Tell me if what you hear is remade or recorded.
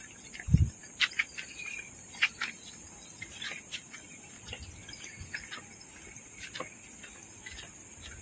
recorded